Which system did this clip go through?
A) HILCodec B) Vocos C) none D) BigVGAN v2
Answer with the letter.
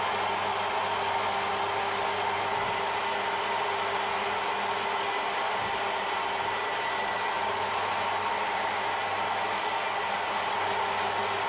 C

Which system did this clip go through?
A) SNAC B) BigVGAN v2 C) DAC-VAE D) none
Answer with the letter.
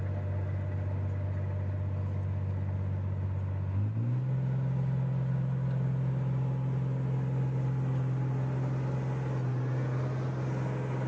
D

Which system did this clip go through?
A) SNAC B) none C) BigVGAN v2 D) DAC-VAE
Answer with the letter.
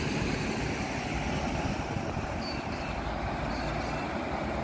B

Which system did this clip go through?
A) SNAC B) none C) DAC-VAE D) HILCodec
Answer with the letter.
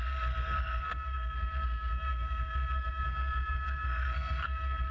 A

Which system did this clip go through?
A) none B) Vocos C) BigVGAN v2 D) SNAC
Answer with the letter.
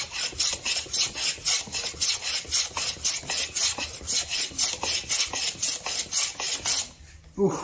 A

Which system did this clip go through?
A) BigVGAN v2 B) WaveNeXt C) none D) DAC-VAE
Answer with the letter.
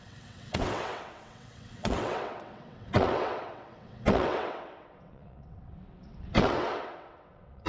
B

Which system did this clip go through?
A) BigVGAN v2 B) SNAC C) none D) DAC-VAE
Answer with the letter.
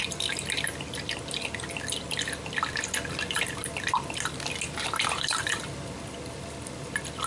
C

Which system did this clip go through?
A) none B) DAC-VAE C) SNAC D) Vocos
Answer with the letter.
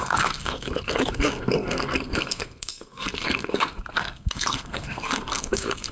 C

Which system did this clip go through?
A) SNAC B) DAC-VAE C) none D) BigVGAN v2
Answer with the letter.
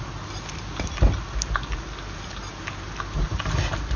C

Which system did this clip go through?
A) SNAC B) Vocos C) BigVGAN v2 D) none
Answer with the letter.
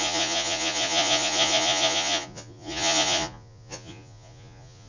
B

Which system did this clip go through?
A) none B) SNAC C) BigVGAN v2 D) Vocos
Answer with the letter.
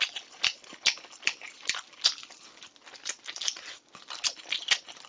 A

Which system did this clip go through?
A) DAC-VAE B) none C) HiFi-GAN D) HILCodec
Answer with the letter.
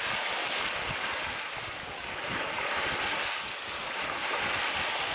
B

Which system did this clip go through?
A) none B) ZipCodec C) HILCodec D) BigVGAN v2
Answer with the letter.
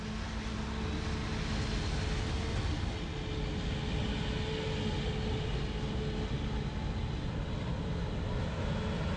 A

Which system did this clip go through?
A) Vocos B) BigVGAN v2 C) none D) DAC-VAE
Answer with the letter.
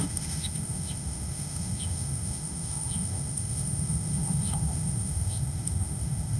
D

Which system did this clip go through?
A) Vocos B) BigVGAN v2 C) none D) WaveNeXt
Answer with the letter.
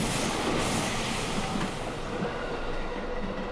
C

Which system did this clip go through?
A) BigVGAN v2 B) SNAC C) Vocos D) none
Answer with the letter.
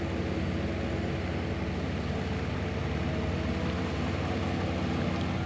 D